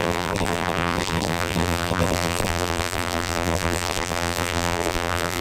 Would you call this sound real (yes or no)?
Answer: no